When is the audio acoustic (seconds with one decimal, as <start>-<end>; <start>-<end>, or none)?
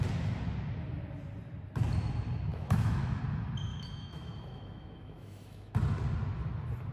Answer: 0.0-2.5; 3.2-3.7; 5.7-6.9